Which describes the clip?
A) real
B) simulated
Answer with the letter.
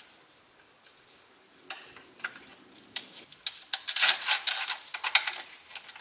A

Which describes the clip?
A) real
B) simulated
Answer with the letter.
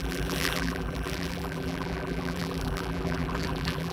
B